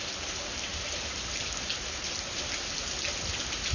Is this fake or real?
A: real